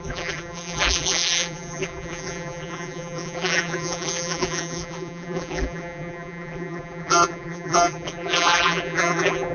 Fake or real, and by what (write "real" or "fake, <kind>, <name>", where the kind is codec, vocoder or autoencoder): fake, vocoder, BigVGAN v2